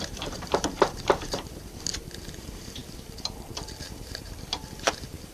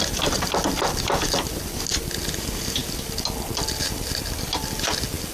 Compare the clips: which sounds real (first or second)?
second